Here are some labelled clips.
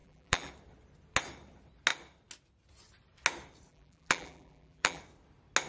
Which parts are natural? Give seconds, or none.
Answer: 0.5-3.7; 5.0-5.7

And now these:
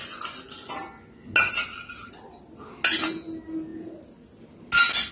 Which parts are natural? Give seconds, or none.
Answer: 0.0-5.1

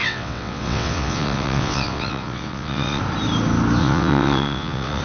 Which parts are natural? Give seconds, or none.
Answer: 3.0-3.8

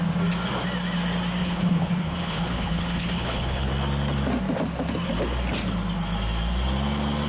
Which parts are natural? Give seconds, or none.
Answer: 0.0-1.4; 3.7-7.3